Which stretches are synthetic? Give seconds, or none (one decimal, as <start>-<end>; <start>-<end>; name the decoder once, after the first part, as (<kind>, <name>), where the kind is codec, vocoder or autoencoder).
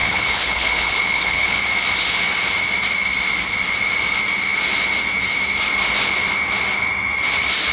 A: 0.0-1.6 (codec, HILCodec)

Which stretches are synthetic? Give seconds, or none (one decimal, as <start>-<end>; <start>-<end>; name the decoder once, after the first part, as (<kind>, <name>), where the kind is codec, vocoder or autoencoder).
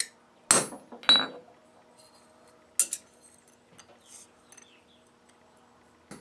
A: none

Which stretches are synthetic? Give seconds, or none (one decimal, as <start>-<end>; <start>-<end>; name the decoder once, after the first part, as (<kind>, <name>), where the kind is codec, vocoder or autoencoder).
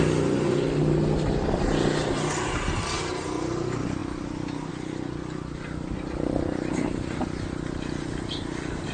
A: none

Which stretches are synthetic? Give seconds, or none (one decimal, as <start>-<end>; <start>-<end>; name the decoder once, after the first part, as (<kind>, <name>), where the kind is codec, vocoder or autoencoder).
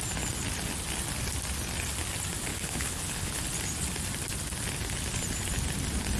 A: 2.5-3.4 (codec, HILCodec)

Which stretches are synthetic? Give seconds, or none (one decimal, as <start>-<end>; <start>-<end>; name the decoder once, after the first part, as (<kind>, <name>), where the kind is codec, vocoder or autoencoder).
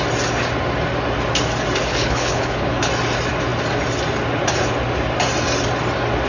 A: 1.9-2.9 (codec, HILCodec)